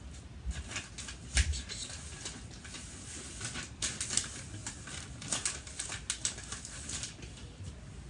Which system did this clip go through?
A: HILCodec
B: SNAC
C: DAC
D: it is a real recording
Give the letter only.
D